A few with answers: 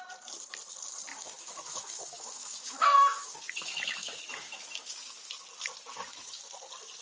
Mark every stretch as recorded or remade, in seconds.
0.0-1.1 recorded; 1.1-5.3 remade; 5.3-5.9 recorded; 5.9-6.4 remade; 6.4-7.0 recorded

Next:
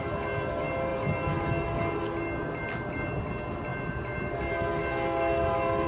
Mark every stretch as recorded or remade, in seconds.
0.0-3.7 recorded; 3.7-4.3 remade; 4.3-5.9 recorded